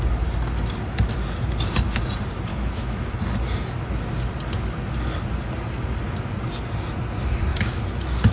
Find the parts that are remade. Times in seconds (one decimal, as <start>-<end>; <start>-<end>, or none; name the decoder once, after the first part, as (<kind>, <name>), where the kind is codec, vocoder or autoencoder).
2.5-3.1 (autoencoder, DAC-VAE); 7.5-8.3